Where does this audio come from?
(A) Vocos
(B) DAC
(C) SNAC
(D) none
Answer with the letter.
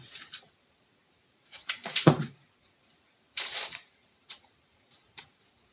A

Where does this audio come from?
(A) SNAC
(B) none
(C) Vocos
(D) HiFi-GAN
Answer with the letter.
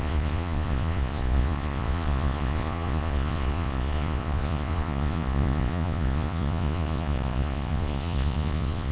C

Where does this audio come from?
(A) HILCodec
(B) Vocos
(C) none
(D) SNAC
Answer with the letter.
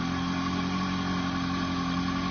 C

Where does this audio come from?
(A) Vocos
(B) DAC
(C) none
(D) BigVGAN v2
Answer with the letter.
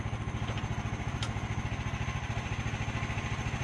C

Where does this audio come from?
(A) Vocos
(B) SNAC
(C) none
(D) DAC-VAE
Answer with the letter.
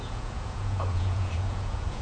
A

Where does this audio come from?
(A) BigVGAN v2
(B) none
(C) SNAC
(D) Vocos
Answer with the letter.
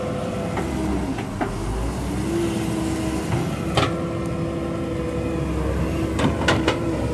B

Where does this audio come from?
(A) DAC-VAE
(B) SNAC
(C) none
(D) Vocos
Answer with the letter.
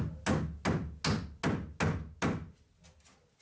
C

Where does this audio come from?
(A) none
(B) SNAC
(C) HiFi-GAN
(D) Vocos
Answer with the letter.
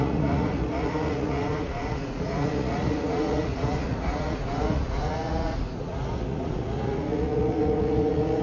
D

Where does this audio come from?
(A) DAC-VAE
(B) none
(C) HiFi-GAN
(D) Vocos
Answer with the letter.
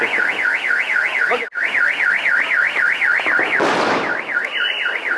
B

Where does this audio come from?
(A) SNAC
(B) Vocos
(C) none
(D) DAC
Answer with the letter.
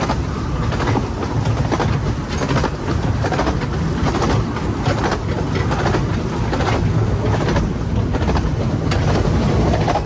C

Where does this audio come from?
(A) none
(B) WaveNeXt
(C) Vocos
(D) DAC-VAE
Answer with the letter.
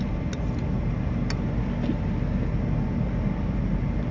A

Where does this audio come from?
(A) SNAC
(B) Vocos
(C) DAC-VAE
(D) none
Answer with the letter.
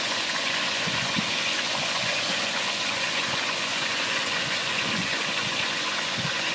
B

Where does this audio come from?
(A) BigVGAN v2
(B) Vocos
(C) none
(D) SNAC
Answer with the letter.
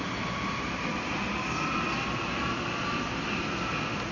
C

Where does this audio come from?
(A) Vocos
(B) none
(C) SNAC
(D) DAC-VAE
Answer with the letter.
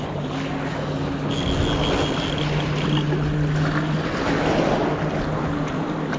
B